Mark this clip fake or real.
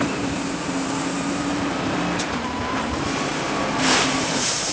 fake